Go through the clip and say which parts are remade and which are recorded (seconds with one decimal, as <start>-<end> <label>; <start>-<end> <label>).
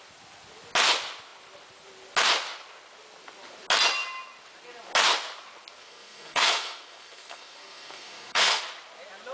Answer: 0.0-5.8 recorded; 5.8-8.6 remade; 8.6-9.3 recorded